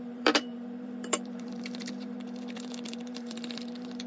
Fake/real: fake